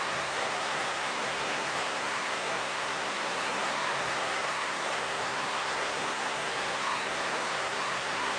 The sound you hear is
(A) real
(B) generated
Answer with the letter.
B